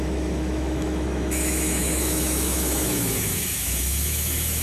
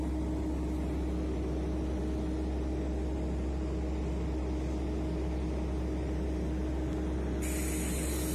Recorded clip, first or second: second